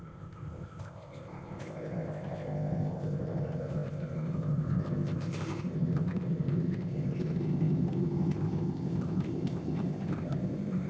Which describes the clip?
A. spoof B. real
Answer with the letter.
A